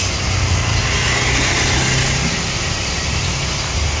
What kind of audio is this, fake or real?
real